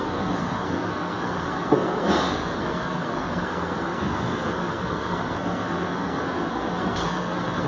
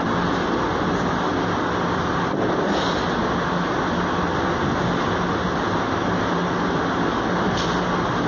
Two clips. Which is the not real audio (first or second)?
first